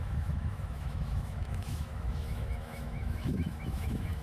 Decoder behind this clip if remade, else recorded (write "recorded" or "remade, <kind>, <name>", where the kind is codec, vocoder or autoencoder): remade, autoencoder, DAC-VAE